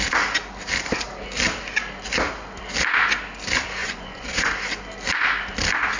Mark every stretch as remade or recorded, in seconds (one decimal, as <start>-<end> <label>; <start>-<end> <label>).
0.0-3.8 recorded; 3.8-4.5 remade; 4.5-6.0 recorded